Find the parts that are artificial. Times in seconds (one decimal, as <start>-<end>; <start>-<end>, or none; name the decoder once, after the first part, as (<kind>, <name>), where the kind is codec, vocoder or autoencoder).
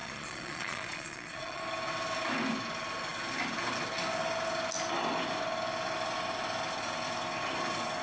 0.0-1.6 (vocoder, Vocos)